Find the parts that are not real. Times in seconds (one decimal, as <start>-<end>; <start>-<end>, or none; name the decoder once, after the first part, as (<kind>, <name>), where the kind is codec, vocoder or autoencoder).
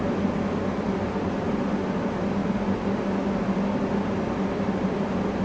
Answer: none